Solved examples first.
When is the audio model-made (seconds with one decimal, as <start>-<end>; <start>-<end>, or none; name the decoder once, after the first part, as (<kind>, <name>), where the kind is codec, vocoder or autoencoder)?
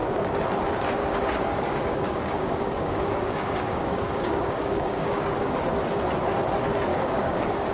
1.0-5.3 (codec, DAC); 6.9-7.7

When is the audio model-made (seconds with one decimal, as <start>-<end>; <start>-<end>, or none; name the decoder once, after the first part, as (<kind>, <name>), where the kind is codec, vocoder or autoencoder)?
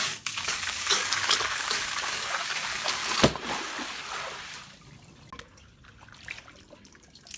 0.0-3.0 (codec, DAC)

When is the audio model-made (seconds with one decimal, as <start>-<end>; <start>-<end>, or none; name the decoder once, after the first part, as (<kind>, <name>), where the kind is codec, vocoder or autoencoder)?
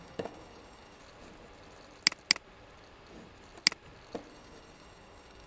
0.0-1.0 (codec, DAC); 4.3-5.5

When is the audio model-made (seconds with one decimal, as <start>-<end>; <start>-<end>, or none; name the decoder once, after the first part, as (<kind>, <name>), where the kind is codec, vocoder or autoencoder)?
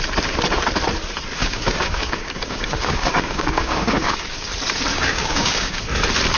1.4-4.5 (codec, DAC); 4.9-5.8